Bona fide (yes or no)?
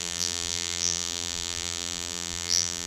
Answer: no